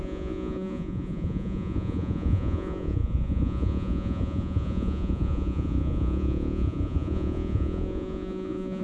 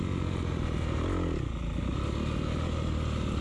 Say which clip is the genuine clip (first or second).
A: second